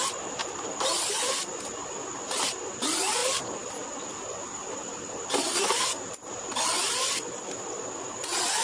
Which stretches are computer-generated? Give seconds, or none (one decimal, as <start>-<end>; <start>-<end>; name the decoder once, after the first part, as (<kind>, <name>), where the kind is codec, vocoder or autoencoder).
none